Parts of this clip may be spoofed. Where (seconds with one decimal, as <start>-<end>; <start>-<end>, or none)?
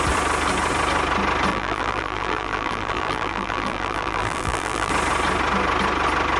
1.5-4.9